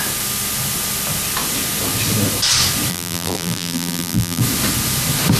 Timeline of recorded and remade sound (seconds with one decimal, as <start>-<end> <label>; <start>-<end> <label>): 0.0-2.9 recorded; 2.9-4.4 remade; 4.4-5.4 recorded